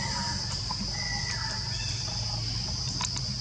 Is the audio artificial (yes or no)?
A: no